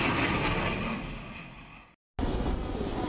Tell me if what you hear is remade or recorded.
recorded